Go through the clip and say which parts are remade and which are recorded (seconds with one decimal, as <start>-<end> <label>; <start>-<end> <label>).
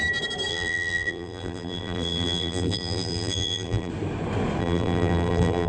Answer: 0.0-0.5 recorded; 0.5-3.9 remade; 3.9-4.6 recorded; 4.6-5.7 remade